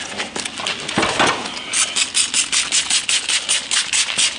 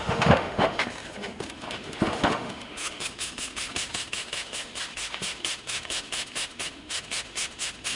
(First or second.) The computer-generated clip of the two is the second